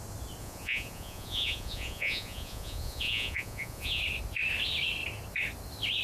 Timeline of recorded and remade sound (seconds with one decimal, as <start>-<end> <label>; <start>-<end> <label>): 0.0-0.4 recorded; 0.4-4.0 remade; 4.0-6.0 recorded